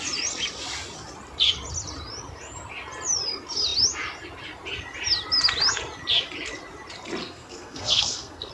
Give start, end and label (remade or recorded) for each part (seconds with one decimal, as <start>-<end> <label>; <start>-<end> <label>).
0.0-7.2 recorded; 7.2-8.5 remade